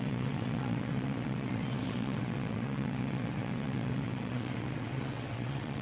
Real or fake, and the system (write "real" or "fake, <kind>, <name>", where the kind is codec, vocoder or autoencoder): fake, vocoder, WaveNeXt